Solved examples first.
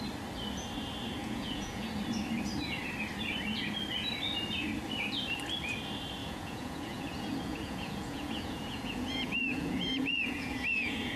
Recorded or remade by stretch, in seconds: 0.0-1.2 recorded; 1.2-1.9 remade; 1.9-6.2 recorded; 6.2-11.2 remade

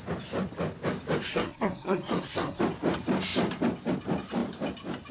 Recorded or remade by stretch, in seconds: 0.0-1.3 recorded; 1.3-2.6 remade; 2.6-5.1 recorded